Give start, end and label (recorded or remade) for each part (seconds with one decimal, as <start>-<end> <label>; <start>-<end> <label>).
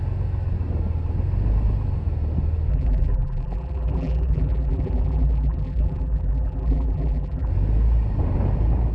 0.0-2.7 recorded; 2.7-7.5 remade; 7.5-8.9 recorded